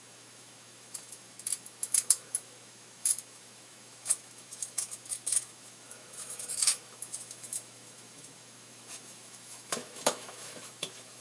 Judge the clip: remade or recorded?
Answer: remade